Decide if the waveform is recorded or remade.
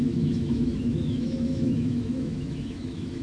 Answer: remade